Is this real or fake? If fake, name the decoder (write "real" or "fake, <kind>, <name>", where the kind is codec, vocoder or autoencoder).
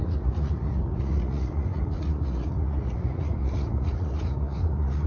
fake, vocoder, Vocos